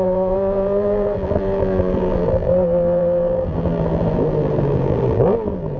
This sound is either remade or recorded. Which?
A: remade